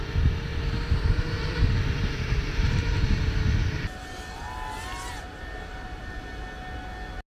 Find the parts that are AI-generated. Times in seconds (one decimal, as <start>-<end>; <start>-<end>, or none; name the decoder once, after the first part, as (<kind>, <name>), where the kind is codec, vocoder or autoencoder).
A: 0.5-3.0 (vocoder, BigVGAN v2); 5.2-6.1